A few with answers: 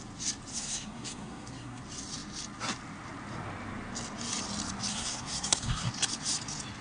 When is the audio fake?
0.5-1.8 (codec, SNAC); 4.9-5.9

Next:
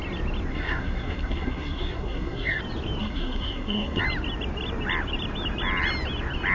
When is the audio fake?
0.5-2.6 (codec, SNAC); 3.0-4.0

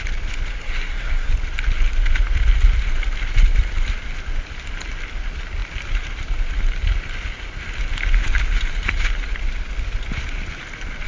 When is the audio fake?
0.5-1.3 (codec, SNAC)

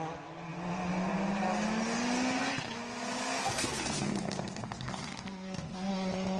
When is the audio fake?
3.4-5.9 (codec, SNAC)

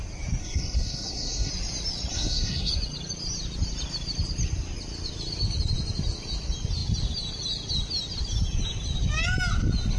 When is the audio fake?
0.4-1.5 (codec, SNAC); 2.1-2.7

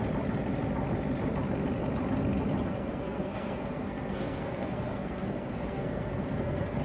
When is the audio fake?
2.7-6.8 (codec, SNAC)